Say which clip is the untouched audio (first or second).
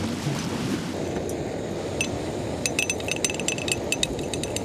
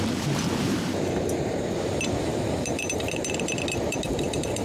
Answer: first